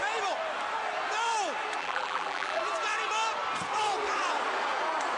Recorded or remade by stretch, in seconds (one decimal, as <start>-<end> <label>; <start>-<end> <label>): 0.0-1.8 recorded; 1.8-2.6 remade; 2.6-5.2 recorded